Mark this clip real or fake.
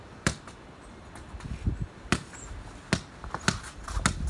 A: real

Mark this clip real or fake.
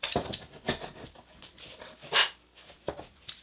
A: real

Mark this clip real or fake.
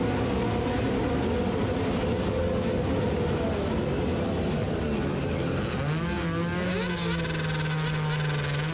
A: real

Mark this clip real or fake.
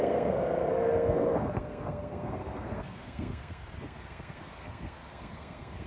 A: fake